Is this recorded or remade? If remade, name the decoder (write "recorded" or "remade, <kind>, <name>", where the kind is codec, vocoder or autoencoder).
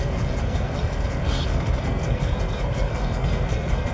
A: remade, codec, SNAC